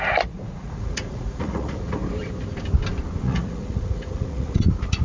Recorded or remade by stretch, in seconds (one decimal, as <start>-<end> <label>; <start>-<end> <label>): 0.0-2.0 remade; 2.0-3.2 recorded; 3.2-5.0 remade